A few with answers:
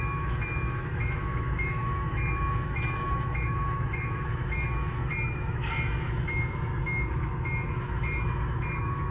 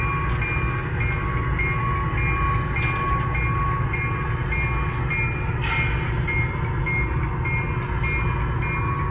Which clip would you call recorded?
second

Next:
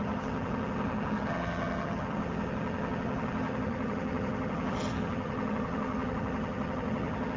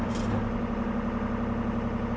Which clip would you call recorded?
second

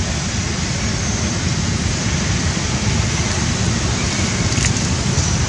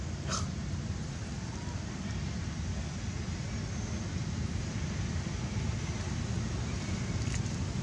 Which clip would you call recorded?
second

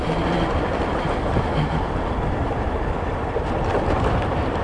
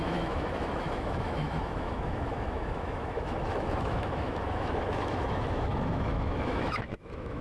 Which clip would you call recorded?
first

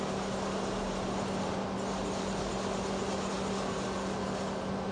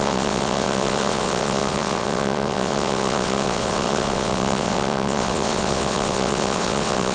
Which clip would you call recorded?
first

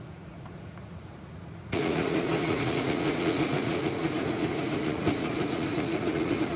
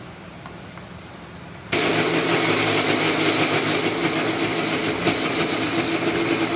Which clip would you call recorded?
second